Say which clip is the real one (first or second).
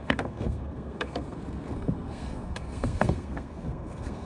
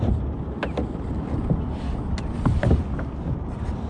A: second